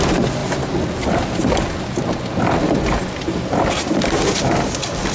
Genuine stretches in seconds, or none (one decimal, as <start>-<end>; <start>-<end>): 0.0-5.1